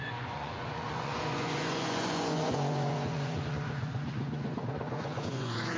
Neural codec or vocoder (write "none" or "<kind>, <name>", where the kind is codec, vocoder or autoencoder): vocoder, Vocos